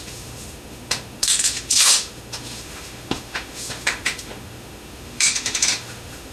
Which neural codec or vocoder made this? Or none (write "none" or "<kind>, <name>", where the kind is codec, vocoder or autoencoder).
autoencoder, DAC-VAE